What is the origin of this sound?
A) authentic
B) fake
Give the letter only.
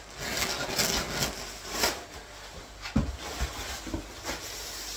A